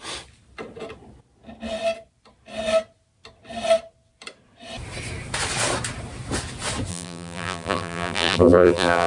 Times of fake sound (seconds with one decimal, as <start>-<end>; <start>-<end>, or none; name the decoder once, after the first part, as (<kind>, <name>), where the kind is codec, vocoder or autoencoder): 6.9-9.1 (vocoder, BigVGAN v2)